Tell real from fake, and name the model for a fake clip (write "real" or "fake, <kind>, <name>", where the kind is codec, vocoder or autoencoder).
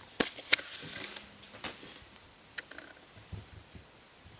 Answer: real